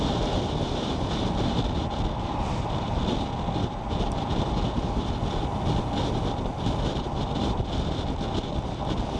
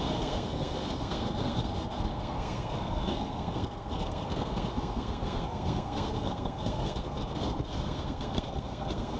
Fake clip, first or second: second